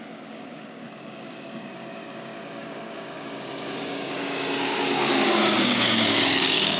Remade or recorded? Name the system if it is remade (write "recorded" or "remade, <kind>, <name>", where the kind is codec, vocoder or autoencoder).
remade, codec, DAC